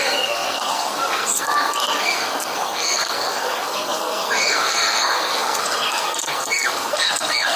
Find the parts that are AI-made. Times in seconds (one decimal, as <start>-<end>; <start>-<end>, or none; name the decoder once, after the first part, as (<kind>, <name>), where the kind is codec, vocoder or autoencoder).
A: 0.0-7.6 (codec, SNAC)